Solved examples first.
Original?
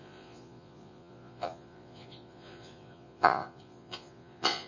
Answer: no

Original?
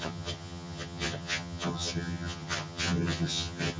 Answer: no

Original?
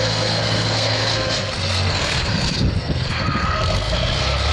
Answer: no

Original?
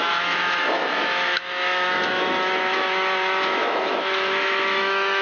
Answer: no